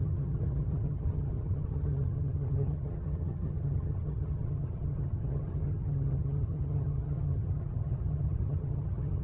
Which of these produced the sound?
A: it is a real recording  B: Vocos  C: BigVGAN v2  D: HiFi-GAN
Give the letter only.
D